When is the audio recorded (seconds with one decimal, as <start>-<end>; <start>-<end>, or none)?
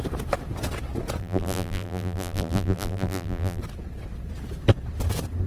0.0-1.2; 3.6-5.5